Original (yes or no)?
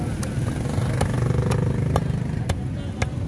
yes